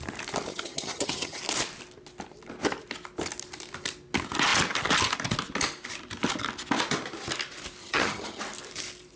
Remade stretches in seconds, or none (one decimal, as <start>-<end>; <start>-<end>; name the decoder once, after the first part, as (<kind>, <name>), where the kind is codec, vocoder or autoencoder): 0.5-1.4 (vocoder, HiFi-GAN); 7.8-8.4